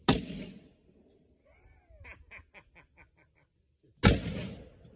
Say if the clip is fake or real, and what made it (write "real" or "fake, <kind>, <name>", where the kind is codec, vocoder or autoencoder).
real